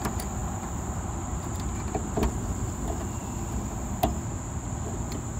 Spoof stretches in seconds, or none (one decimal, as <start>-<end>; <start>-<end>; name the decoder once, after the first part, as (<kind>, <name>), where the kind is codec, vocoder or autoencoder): none